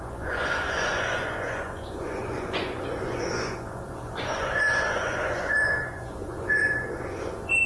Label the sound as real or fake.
fake